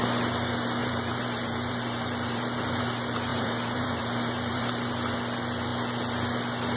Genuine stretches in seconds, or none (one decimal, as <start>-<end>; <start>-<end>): 0.0-0.8; 2.8-3.3; 4.9-6.8